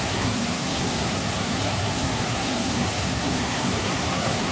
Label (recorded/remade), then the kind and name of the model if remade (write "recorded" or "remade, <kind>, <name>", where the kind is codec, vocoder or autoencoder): remade, codec, SNAC